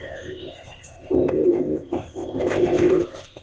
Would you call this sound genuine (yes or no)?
no